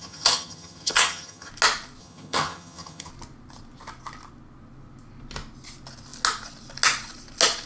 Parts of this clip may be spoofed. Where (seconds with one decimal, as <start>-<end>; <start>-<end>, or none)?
0.0-1.5; 2.0-3.1